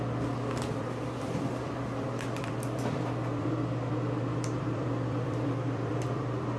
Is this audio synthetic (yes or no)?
yes